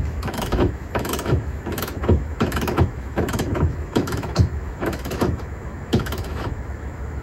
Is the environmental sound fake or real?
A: fake